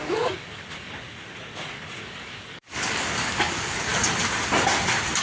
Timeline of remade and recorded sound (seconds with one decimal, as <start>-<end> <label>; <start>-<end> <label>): 0.0-3.9 remade; 3.9-5.2 recorded